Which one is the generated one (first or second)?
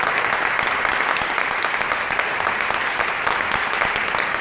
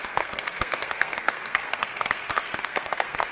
second